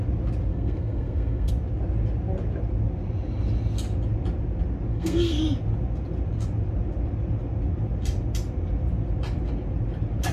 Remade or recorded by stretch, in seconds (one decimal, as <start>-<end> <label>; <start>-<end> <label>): 0.0-0.5 recorded; 0.5-1.5 remade; 1.5-4.9 recorded; 4.9-5.4 remade; 5.4-10.3 recorded